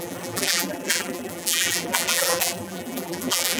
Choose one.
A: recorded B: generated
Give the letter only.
B